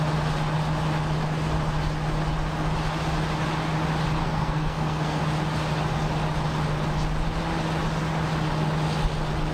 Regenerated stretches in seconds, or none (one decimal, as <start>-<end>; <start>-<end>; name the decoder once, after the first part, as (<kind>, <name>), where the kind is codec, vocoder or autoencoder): 4.2-5.2 (codec, SNAC)